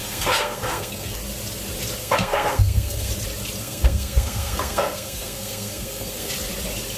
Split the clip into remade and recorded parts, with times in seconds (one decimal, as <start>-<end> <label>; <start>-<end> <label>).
0.0-1.2 remade; 1.2-2.0 recorded; 2.0-3.1 remade; 3.1-3.6 recorded; 3.6-6.3 remade; 6.3-7.0 recorded